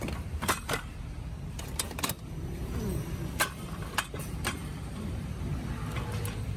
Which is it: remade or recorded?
remade